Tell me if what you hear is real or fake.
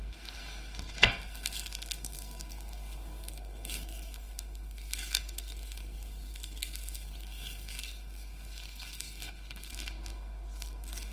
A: fake